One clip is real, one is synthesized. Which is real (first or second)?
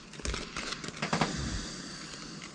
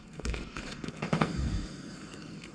first